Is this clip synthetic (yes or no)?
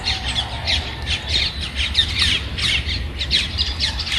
no